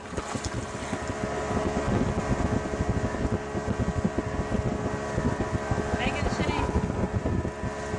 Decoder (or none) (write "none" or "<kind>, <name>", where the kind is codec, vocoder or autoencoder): none